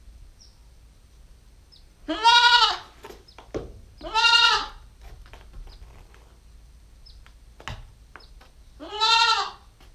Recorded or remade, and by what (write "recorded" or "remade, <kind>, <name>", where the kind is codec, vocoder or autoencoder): recorded